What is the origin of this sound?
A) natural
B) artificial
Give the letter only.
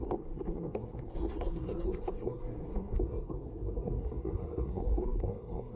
B